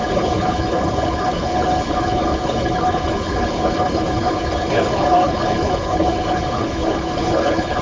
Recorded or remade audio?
remade